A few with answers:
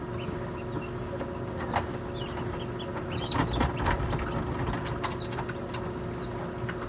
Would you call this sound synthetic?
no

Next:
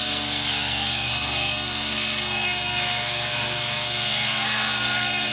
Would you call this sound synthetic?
yes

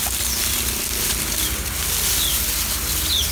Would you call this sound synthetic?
no